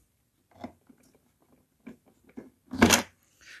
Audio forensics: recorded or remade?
recorded